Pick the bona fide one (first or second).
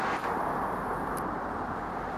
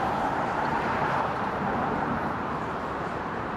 first